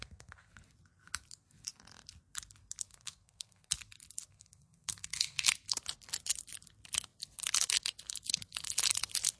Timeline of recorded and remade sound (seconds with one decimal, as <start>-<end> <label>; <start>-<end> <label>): 0.0-0.5 remade; 0.5-2.9 recorded; 2.9-3.7 remade; 3.7-4.3 recorded; 4.3-5.5 remade; 5.5-9.4 recorded